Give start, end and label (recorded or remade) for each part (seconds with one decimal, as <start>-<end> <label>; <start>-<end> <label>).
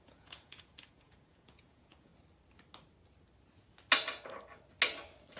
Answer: 0.0-2.1 remade; 2.1-5.4 recorded